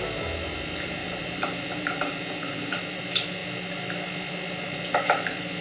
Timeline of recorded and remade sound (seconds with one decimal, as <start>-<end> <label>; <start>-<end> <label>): 0.0-1.0 recorded; 1.0-2.8 remade; 2.8-5.6 recorded